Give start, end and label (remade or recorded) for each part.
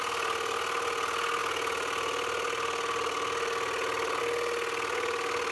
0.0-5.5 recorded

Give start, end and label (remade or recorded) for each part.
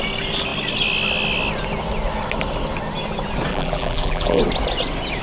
0.0-3.5 recorded; 3.5-4.4 remade; 4.4-5.2 recorded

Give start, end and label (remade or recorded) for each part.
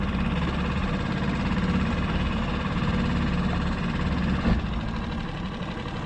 0.0-0.8 recorded; 0.8-2.9 remade; 2.9-6.1 recorded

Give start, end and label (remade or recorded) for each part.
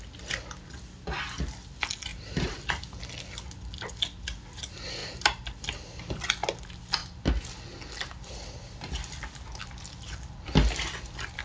0.0-2.1 recorded; 2.1-2.8 remade; 2.8-5.0 recorded; 5.0-5.5 remade; 5.5-11.4 recorded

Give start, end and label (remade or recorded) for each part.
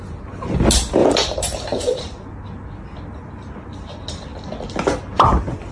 0.0-1.0 recorded; 1.0-2.0 remade; 2.0-5.7 recorded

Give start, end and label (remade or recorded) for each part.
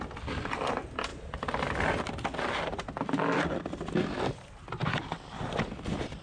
0.0-6.2 recorded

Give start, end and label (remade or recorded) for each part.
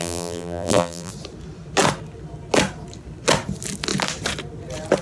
0.0-1.1 remade; 1.1-5.0 recorded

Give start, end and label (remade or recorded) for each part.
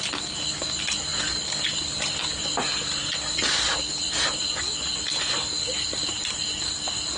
0.0-1.1 recorded; 1.1-4.5 remade; 4.5-7.2 recorded